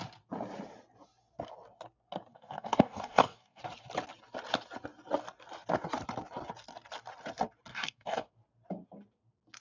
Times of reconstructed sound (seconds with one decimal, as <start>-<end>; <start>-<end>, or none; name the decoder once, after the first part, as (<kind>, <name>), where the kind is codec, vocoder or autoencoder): 2.3-3.6 (codec, DAC); 7.7-8.3